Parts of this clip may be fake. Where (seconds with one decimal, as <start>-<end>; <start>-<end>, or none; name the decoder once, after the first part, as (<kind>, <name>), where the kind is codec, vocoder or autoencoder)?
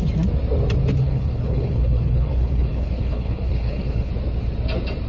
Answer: 1.0-4.1 (codec, HILCodec)